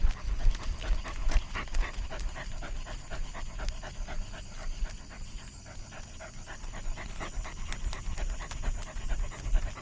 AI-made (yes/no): no